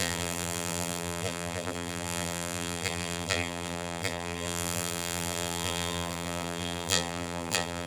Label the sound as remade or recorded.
remade